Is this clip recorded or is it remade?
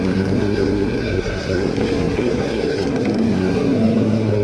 remade